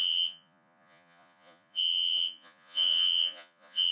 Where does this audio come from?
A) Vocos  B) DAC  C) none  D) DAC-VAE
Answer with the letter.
A